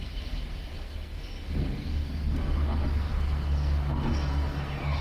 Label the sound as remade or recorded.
remade